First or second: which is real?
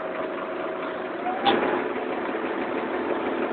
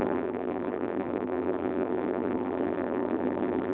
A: first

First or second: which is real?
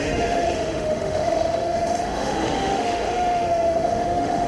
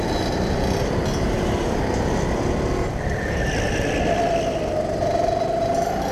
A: second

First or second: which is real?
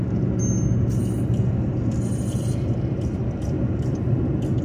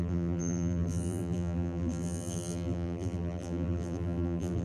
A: first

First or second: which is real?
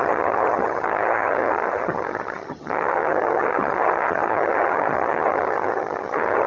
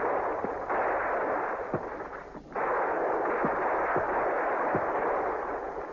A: second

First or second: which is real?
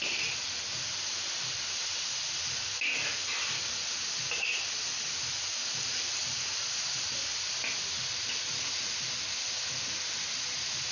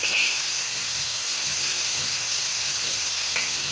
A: first